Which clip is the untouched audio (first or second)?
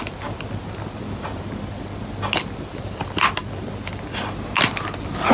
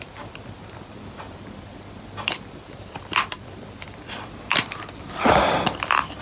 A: first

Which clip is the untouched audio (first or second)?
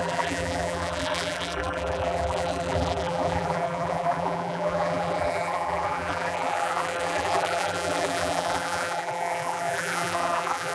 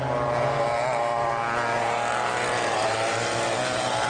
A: second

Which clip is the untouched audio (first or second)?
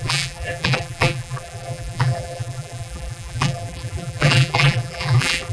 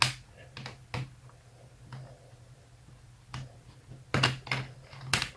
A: second